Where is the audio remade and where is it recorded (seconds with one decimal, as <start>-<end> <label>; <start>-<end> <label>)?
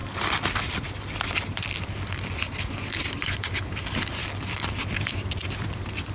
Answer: 0.0-6.1 recorded